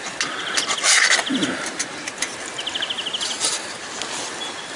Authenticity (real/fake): real